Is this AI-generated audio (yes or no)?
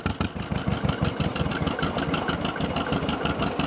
no